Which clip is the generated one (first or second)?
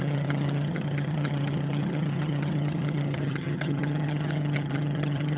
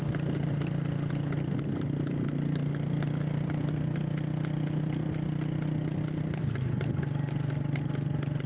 first